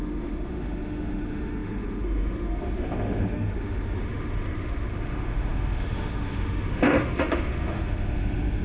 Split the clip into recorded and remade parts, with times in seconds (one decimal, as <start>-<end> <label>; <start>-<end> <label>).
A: 0.0-8.6 remade